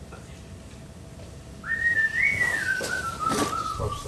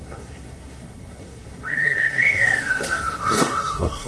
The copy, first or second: second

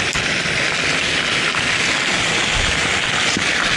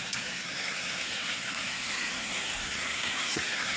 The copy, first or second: second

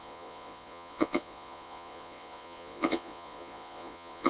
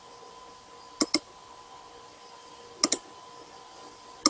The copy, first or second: first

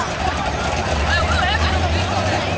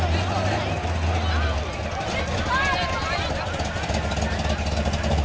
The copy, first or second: first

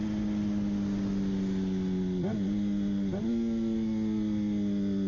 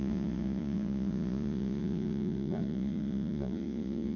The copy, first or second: second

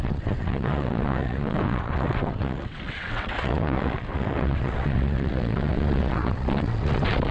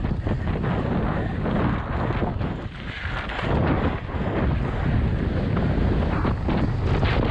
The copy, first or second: first